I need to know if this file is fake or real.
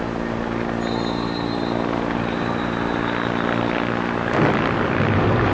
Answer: real